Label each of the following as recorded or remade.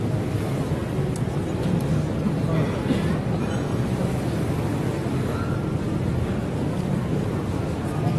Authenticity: recorded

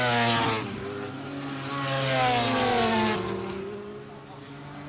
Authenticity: recorded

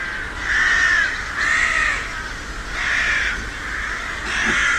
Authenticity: recorded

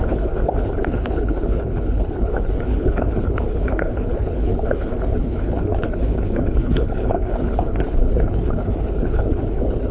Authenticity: remade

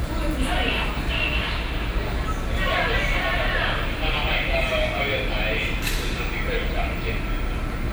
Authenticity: recorded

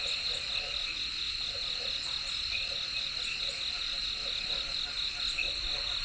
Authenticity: recorded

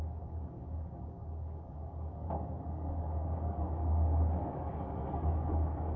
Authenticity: remade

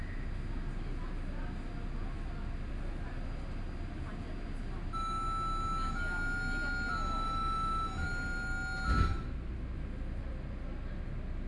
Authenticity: recorded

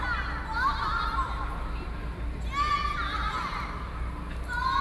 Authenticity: recorded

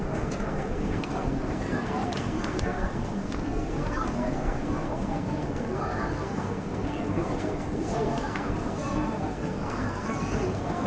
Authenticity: remade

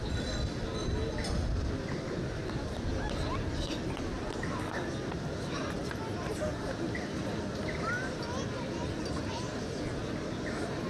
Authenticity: recorded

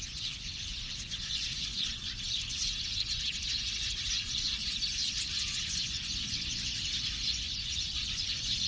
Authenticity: remade